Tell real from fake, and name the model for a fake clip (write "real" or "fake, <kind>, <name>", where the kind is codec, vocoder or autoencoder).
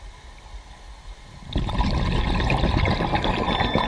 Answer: real